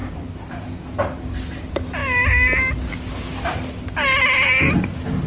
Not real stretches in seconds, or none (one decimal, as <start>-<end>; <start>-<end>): 0.0-0.9

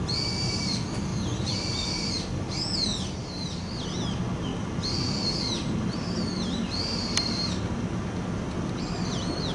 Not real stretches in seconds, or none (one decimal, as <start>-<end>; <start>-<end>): none

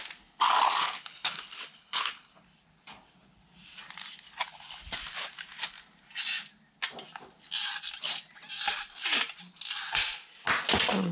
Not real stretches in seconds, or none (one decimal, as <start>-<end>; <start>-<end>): 0.8-2.4

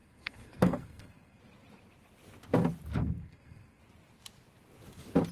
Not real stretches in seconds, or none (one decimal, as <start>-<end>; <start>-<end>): 0.0-1.4; 3.0-3.8

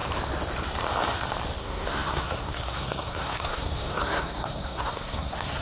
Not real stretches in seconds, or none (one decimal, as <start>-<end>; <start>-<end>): 1.6-5.6